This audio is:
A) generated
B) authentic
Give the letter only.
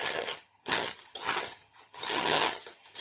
A